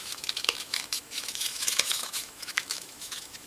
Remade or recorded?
remade